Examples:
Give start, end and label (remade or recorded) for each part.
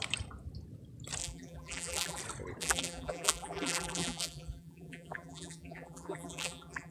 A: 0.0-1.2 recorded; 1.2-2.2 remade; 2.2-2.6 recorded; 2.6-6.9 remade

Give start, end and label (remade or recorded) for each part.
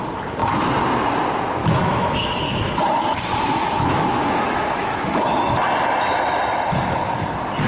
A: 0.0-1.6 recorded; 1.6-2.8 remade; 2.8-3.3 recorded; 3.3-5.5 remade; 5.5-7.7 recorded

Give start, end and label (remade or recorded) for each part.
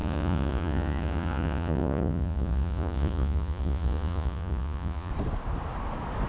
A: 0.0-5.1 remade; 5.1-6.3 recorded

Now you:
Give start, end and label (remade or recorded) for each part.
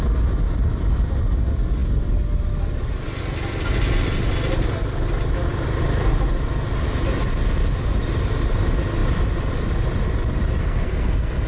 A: 0.0-10.6 recorded; 10.6-11.5 remade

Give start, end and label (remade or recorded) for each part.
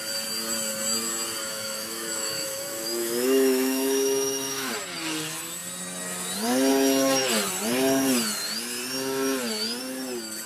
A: 0.0-1.4 recorded; 1.4-4.7 remade; 4.7-10.5 recorded